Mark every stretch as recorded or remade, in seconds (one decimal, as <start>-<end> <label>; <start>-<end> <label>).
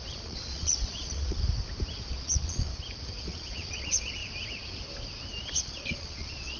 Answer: 0.0-1.4 remade; 1.4-2.1 recorded; 2.1-2.7 remade; 2.7-3.2 recorded; 3.2-4.2 remade; 4.2-5.5 recorded; 5.5-6.6 remade